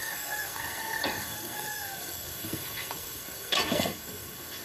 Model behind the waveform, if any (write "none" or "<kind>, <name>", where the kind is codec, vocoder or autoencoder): codec, SNAC